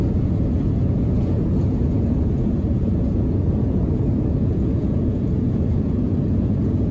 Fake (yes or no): yes